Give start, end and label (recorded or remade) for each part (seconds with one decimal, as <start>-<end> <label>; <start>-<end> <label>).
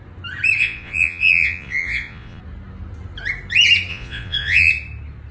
0.0-0.6 recorded; 0.6-2.4 remade; 2.4-3.9 recorded; 3.9-4.7 remade; 4.7-5.3 recorded